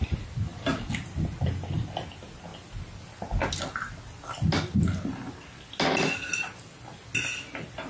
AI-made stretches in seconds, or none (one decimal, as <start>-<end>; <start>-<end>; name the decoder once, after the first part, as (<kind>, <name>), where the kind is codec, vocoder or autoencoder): none